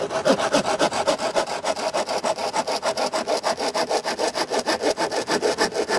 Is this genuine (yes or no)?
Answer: yes